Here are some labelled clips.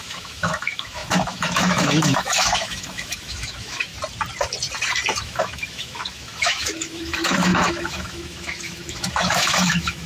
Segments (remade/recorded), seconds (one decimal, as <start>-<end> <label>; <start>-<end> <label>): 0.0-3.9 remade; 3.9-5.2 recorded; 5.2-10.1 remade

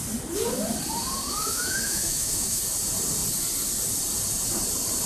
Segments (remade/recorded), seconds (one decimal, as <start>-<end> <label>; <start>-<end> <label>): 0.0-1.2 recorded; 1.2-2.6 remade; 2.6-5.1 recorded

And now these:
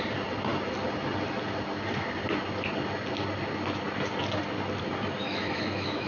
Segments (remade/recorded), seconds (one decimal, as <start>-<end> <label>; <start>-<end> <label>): 0.0-5.2 recorded; 5.2-6.1 remade

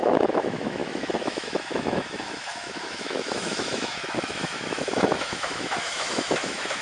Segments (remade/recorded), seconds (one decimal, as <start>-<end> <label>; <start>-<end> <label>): 0.0-6.8 remade